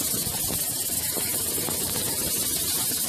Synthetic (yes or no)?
yes